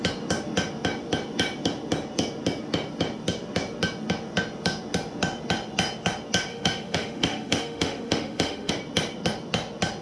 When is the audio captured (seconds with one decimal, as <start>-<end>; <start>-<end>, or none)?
0.0-6.5; 8.7-10.0